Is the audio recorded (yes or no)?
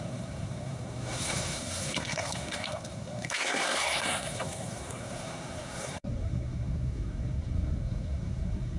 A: no